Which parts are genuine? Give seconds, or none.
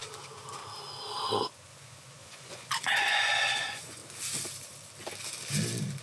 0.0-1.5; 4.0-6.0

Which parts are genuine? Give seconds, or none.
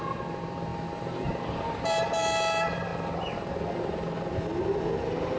0.0-5.4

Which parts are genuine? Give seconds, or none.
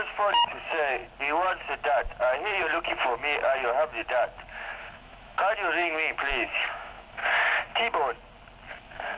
1.0-4.5; 7.2-8.7